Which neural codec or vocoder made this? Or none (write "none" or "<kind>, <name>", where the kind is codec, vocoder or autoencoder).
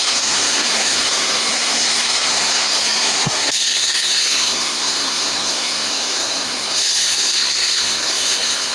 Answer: codec, SNAC